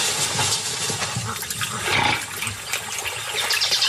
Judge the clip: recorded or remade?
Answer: recorded